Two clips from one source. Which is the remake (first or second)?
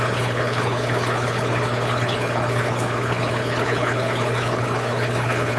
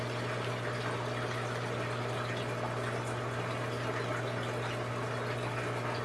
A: first